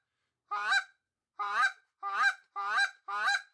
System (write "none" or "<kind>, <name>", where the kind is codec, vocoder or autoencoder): vocoder, BigVGAN v2